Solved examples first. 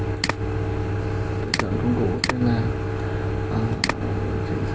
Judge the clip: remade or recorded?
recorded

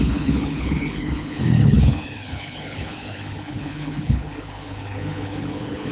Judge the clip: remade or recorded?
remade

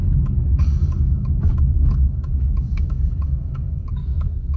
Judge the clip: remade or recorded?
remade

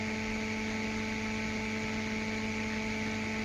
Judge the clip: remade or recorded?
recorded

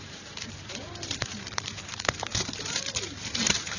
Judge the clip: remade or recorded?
remade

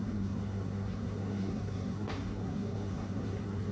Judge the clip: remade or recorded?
remade